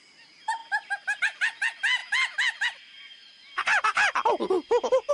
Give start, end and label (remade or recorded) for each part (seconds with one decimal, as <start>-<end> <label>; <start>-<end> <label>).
0.0-5.1 recorded